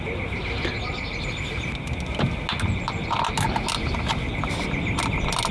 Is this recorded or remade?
recorded